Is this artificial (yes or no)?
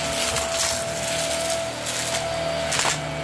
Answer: no